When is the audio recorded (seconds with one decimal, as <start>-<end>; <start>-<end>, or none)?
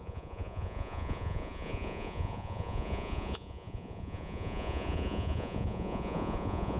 none